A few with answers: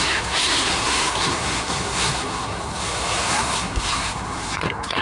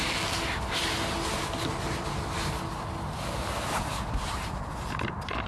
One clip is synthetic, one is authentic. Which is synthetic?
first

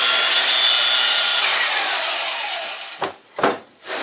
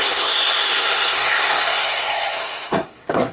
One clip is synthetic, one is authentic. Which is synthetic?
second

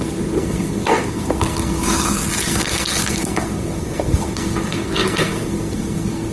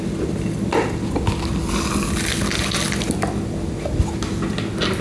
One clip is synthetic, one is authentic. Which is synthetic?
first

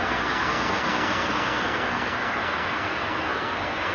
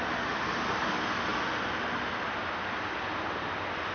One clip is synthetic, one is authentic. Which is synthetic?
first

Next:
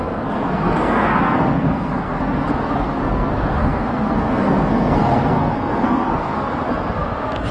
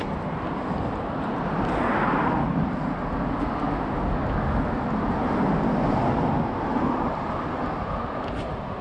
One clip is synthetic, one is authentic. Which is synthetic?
first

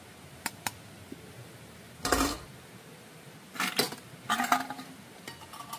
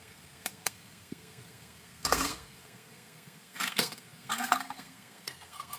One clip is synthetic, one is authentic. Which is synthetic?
second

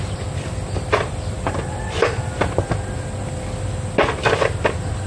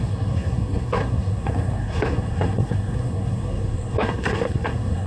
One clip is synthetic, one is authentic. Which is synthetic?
second